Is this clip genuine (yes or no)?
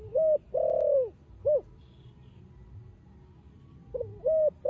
yes